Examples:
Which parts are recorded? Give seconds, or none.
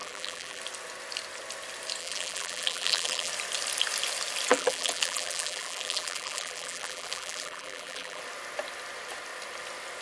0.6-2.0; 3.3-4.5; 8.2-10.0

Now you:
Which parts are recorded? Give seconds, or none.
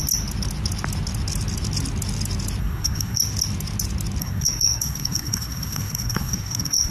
0.0-2.6; 3.2-4.2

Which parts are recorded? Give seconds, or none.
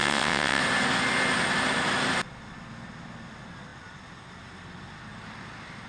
0.6-5.9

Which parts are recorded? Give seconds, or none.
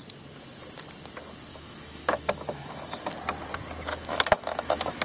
0.0-1.5; 3.1-3.9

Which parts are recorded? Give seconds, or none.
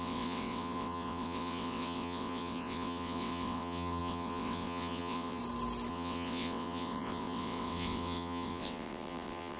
5.4-5.9